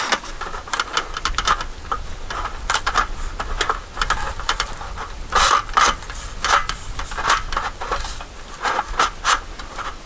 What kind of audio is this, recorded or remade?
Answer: recorded